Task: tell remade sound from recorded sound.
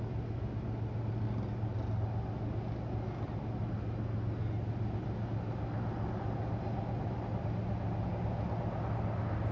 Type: recorded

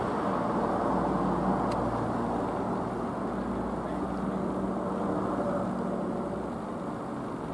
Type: recorded